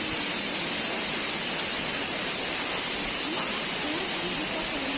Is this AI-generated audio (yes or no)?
no